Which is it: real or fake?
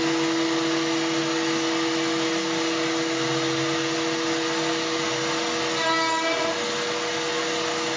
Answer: real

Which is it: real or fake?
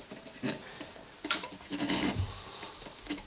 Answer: fake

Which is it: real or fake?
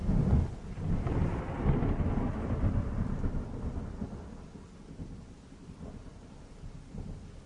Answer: real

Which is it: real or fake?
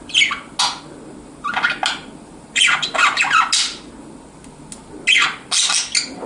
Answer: real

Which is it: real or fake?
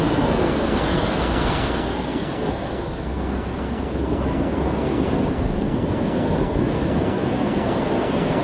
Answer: fake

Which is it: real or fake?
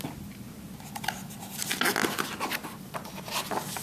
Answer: real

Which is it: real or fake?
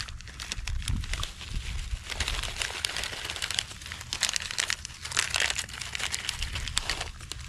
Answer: real